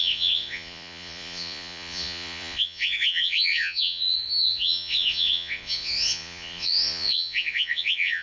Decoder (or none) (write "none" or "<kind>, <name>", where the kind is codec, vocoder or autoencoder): vocoder, Vocos